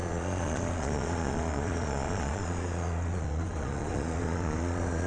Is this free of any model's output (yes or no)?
no